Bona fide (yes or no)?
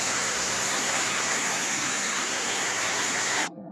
no